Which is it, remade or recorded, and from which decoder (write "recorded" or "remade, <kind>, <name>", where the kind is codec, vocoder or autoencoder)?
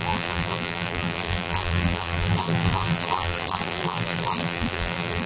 remade, vocoder, BigVGAN v2